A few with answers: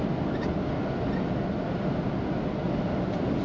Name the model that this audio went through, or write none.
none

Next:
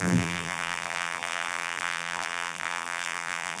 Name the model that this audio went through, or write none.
vocoder, BigVGAN v2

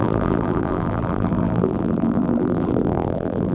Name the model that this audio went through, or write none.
vocoder, BigVGAN v2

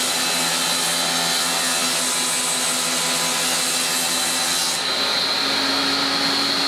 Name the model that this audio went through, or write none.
none